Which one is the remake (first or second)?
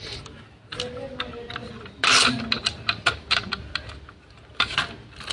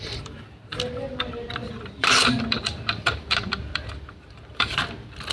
second